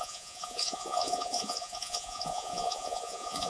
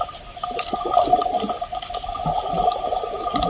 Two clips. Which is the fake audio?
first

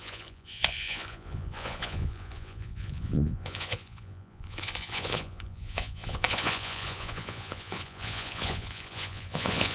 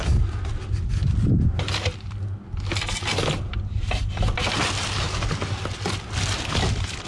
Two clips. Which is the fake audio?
first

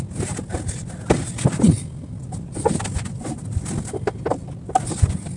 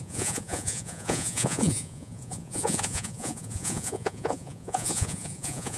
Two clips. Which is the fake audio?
second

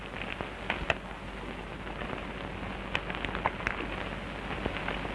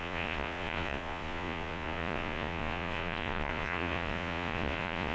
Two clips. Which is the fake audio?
second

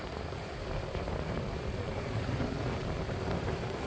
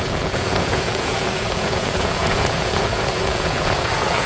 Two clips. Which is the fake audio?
second